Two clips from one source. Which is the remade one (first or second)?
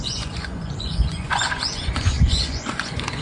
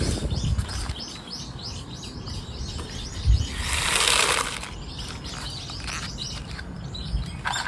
first